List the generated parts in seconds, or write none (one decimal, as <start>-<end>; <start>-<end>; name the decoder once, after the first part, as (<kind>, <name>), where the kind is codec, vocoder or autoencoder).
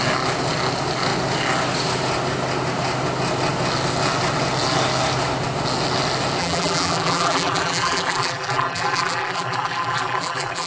6.4-10.7 (vocoder, BigVGAN v2)